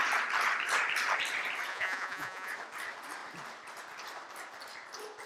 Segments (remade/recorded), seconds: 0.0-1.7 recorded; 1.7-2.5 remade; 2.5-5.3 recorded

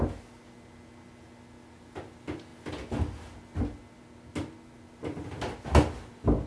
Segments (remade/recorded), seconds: 0.0-6.5 recorded

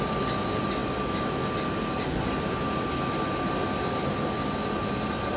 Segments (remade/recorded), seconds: 0.0-5.4 recorded

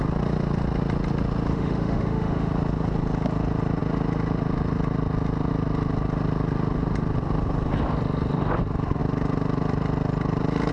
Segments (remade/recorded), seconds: 0.0-1.5 recorded; 1.5-2.5 remade; 2.5-10.7 recorded

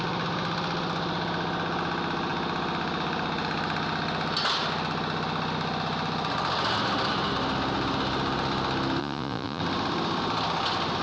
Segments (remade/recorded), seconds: 0.0-9.0 recorded; 9.0-9.6 remade; 9.6-11.0 recorded

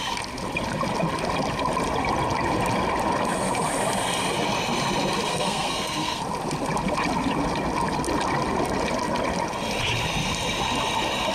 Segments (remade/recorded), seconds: 0.0-5.3 recorded; 5.3-6.2 remade; 6.2-11.3 recorded

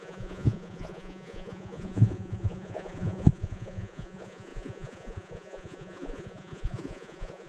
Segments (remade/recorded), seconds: 0.0-7.5 remade

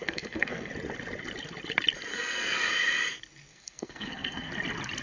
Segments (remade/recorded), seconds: 0.0-0.7 remade; 0.7-2.1 recorded; 2.1-2.7 remade; 2.7-3.5 recorded; 3.5-4.5 remade; 4.5-5.0 recorded